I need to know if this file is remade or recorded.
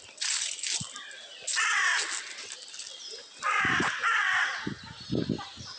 recorded